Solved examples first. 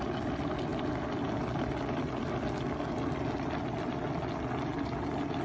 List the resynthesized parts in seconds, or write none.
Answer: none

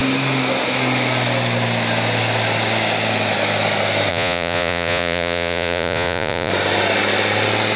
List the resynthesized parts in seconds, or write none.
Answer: 4.1-6.5 (vocoder, Vocos)